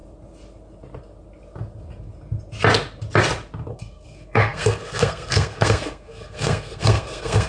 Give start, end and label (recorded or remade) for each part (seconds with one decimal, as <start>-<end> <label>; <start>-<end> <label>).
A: 0.0-3.7 recorded; 3.7-7.5 remade